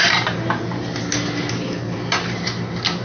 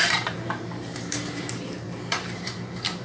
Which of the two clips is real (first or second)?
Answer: first